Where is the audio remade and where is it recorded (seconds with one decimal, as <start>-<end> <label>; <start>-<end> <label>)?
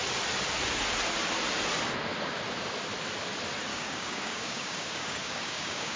0.0-3.7 recorded; 3.7-6.0 remade